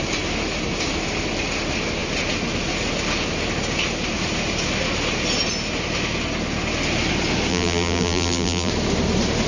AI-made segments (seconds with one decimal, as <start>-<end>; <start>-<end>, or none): 7.5-8.7